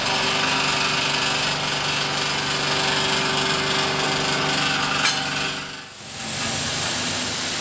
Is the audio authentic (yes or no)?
yes